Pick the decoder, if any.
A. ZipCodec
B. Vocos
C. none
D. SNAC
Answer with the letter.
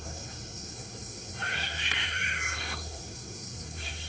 D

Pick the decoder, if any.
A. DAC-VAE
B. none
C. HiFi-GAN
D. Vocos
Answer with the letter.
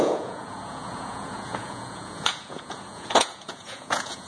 D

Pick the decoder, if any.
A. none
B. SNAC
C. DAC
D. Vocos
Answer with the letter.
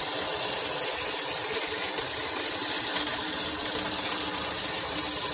A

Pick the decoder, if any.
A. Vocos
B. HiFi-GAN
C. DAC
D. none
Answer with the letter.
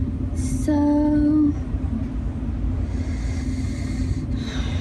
D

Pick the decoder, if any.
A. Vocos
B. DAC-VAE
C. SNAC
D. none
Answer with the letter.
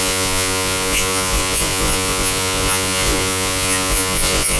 A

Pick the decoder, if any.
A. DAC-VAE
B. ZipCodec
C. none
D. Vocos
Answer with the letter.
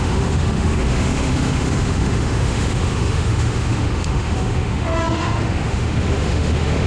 A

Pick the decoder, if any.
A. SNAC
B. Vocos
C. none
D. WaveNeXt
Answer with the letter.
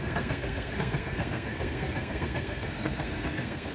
A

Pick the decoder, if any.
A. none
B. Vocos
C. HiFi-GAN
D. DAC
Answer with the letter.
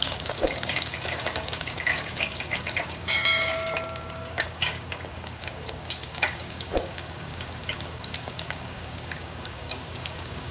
D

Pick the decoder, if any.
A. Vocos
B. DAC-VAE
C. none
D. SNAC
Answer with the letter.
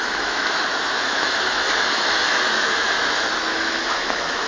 B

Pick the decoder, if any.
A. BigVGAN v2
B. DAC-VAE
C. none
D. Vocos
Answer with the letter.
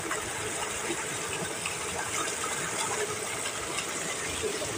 C